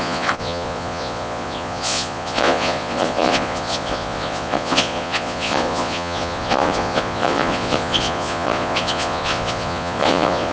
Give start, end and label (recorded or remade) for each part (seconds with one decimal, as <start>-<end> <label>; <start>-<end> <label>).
0.0-10.5 remade

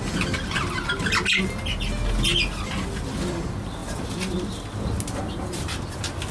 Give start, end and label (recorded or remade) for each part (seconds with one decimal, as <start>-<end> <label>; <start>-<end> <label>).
0.0-6.3 recorded

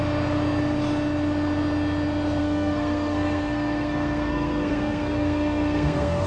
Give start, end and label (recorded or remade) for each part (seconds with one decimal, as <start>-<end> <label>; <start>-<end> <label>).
0.0-2.4 recorded; 2.4-6.3 remade

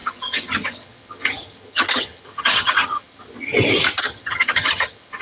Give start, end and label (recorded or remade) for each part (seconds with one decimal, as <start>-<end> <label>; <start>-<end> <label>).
0.0-3.5 remade; 3.5-4.0 recorded; 4.0-5.2 remade

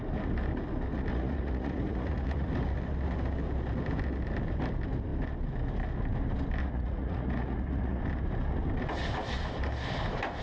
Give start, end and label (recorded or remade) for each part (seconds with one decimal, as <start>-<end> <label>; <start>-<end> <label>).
0.0-1.1 recorded; 1.1-2.5 remade; 2.5-6.6 recorded; 6.6-8.0 remade; 8.0-10.4 recorded

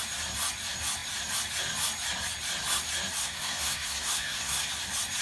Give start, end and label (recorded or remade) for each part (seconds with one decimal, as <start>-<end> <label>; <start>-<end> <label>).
0.0-3.2 recorded; 3.2-4.7 remade; 4.7-5.2 recorded